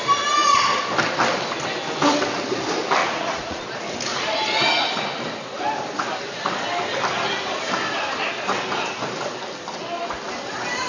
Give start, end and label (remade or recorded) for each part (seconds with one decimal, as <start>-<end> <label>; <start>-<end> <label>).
0.0-3.0 recorded; 3.0-3.6 remade; 3.6-4.1 recorded; 4.1-4.7 remade; 4.7-10.9 recorded